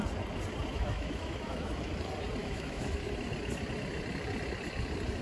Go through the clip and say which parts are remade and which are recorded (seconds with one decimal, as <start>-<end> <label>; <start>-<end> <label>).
0.0-0.7 recorded; 0.7-1.9 remade; 1.9-2.4 recorded; 2.4-3.1 remade; 3.1-5.2 recorded